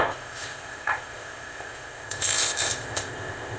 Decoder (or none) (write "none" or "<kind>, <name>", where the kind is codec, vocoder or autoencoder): codec, ZipCodec